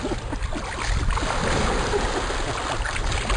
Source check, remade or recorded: recorded